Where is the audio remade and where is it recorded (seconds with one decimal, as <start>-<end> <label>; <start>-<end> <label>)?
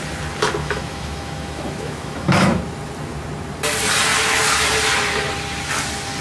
0.0-0.6 recorded; 0.6-2.6 remade; 2.6-6.2 recorded